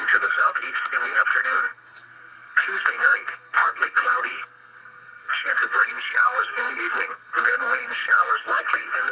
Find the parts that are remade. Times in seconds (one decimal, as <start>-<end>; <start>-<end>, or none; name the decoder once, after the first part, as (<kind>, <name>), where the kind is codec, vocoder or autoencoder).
0.0-9.1 (codec, SNAC)